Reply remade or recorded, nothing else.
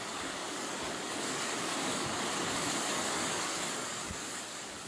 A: remade